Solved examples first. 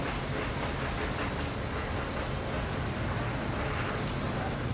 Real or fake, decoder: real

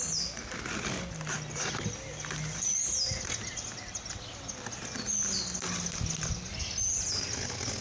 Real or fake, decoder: real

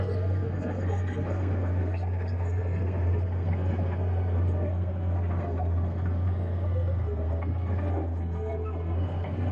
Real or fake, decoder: fake, codec, SNAC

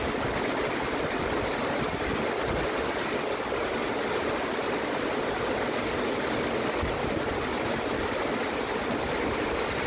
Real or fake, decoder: real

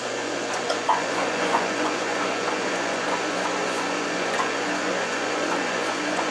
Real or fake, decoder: fake, vocoder, Vocos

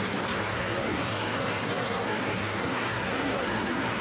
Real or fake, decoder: fake, codec, SNAC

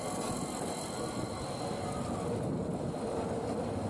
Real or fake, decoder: real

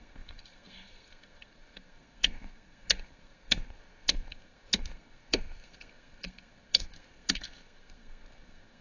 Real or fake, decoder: fake, codec, SNAC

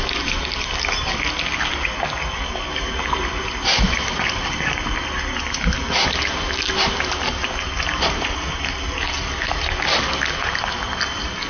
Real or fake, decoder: real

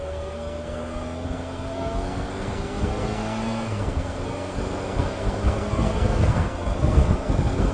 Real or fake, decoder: fake, codec, SNAC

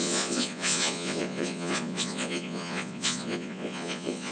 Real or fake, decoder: fake, vocoder, Vocos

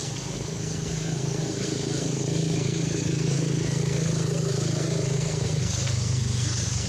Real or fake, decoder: fake, codec, SNAC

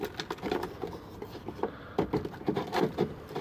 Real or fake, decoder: real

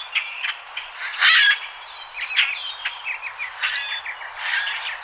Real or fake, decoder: fake, vocoder, BigVGAN v2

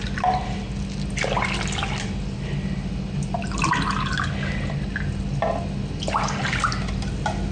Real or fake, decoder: real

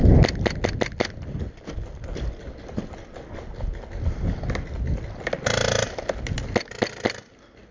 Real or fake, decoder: real